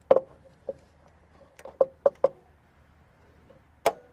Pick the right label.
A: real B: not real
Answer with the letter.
A